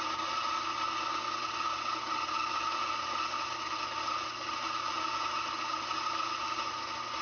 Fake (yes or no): no